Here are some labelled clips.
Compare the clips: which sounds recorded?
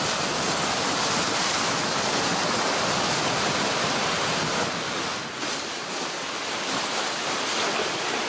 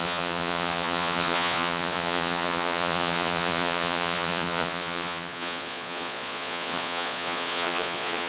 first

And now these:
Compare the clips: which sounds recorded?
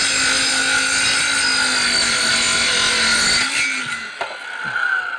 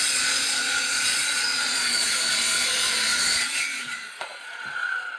first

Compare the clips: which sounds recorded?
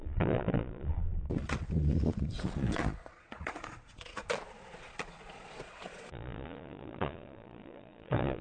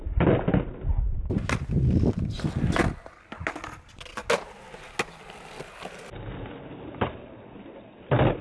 second